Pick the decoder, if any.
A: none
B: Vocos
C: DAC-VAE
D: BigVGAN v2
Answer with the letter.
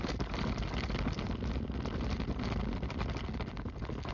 A